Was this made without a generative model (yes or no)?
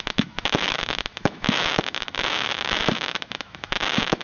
no